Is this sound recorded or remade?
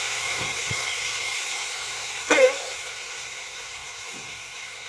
remade